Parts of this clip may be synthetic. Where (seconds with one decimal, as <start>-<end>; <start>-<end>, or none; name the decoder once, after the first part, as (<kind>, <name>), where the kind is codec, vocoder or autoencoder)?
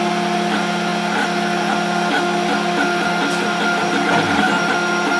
none